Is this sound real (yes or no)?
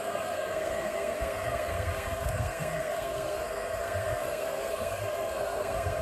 no